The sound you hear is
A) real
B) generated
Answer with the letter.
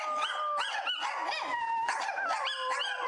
A